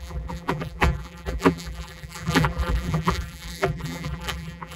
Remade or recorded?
remade